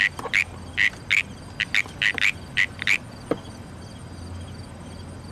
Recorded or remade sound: recorded